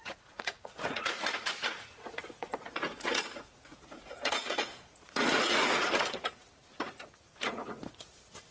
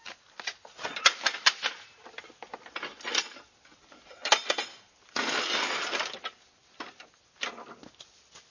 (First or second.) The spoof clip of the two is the first